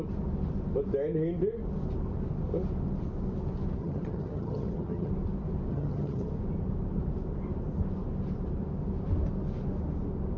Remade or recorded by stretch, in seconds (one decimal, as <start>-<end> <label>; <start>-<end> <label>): 0.0-3.8 recorded; 3.8-5.1 remade; 5.1-5.7 recorded; 5.7-6.3 remade; 6.3-10.4 recorded